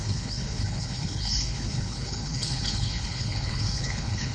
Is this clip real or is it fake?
fake